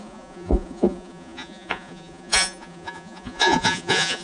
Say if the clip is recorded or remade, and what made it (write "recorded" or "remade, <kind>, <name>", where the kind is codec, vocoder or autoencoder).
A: remade, vocoder, Vocos